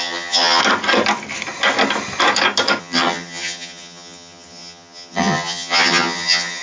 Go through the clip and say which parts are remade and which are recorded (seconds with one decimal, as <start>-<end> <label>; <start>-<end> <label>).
0.0-0.6 remade; 0.6-2.8 recorded; 2.8-6.6 remade